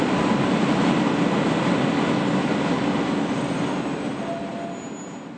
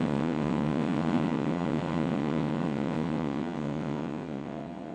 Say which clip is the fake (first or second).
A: second